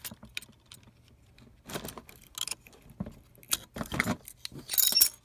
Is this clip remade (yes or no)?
no